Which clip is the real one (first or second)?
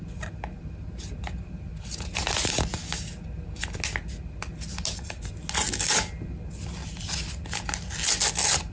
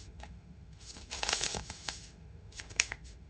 first